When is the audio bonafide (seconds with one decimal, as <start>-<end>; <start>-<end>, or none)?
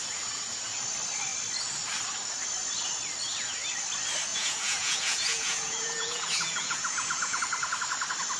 0.0-4.3; 7.4-8.4